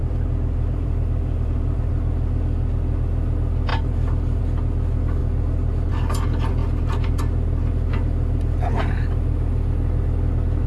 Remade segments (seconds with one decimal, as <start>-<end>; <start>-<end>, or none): 0.0-1.9; 3.7-4.4